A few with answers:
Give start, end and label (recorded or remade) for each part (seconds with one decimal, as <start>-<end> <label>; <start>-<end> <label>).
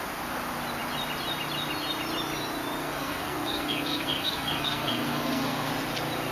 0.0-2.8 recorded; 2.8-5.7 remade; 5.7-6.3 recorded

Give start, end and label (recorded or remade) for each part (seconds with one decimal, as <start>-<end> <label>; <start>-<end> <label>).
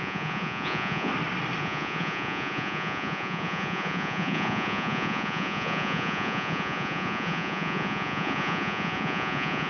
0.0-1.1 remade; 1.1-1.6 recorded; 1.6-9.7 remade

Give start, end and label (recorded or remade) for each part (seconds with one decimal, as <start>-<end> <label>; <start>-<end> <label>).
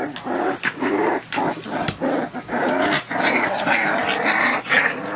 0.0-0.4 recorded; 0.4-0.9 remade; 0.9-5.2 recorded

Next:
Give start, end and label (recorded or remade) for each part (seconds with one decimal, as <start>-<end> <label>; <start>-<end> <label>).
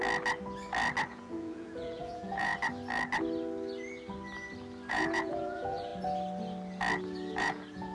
0.0-1.1 recorded; 1.1-2.5 remade; 2.5-4.9 recorded; 4.9-5.9 remade; 5.9-7.4 recorded; 7.4-7.9 remade